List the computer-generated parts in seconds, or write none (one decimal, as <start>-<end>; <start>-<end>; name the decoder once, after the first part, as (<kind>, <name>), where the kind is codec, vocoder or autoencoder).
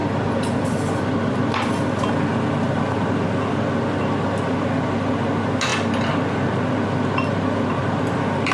none